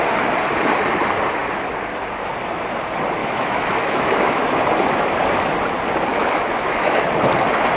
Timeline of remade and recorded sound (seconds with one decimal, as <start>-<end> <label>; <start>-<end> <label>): 0.0-3.2 recorded; 3.2-4.4 remade; 4.4-6.1 recorded; 6.1-7.1 remade; 7.1-7.8 recorded

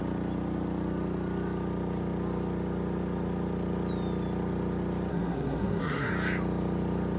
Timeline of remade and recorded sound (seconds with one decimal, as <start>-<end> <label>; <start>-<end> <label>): 0.0-5.1 recorded; 5.1-6.1 remade; 6.1-7.2 recorded

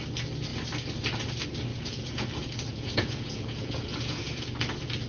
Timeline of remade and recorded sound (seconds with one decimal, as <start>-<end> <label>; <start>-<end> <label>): 0.0-1.7 recorded; 1.7-2.3 remade; 2.3-2.7 recorded; 2.7-4.5 remade; 4.5-5.1 recorded

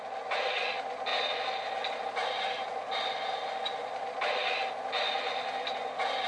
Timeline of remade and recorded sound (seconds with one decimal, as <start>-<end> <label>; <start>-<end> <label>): 0.0-6.3 recorded

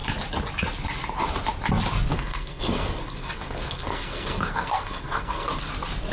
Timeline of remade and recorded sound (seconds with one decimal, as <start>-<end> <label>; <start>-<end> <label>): 0.0-2.1 recorded; 2.1-5.5 remade; 5.5-6.1 recorded

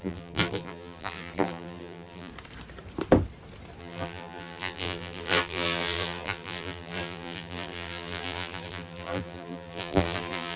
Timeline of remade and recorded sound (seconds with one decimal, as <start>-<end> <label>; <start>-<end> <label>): 0.0-2.3 remade; 2.3-3.8 recorded; 3.8-10.6 remade